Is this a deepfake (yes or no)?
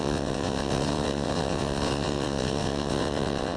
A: yes